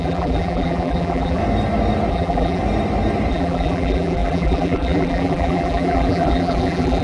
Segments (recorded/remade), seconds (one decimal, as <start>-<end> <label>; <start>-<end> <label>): 0.0-1.4 remade; 1.4-2.1 recorded; 2.1-2.6 remade; 2.6-3.3 recorded; 3.3-7.0 remade